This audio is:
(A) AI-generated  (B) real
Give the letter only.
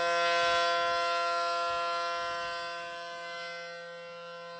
B